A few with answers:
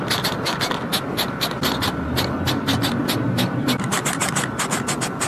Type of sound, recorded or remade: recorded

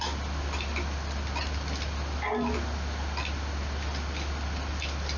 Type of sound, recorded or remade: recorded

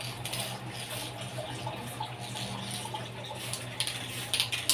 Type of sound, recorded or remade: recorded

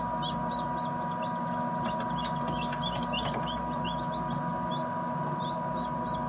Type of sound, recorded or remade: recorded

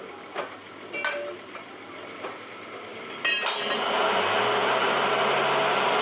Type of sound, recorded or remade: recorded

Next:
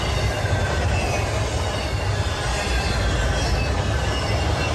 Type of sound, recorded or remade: recorded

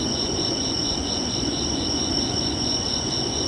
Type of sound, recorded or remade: remade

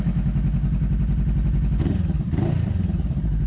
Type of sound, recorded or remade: recorded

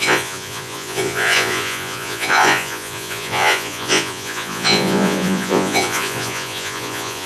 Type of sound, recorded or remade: remade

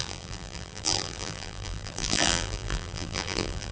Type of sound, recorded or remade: remade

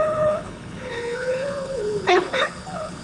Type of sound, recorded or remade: remade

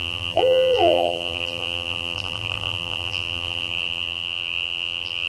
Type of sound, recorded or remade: remade